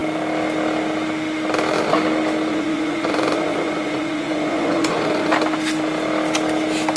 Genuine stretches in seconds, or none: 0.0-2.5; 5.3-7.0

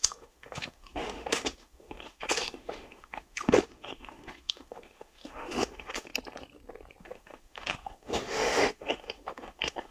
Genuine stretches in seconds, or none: 6.1-7.0

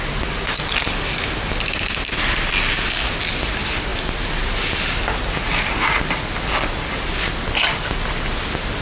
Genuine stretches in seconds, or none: 0.0-8.8

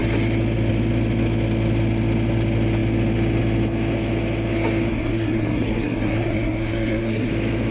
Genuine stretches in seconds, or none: 0.0-4.9; 7.3-7.7

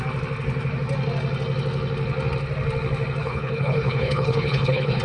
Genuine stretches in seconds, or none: 0.0-3.2

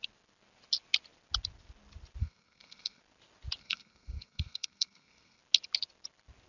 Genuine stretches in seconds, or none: 0.0-2.2; 3.0-3.6; 5.4-6.5